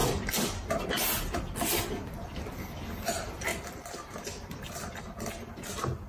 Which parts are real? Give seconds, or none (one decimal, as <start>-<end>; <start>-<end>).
0.0-2.7